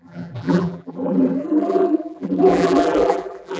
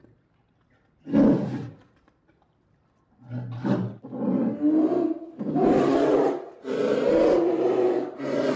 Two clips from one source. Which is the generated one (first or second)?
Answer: first